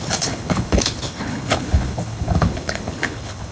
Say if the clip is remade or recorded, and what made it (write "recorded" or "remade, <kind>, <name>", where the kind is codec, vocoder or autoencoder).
remade, codec, HILCodec